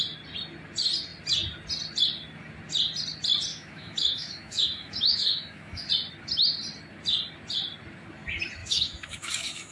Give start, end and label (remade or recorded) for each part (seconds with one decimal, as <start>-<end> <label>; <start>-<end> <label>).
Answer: 0.0-3.5 recorded; 3.5-5.9 remade; 5.9-8.6 recorded; 8.6-9.7 remade